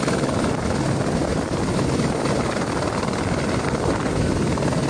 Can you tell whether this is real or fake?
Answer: real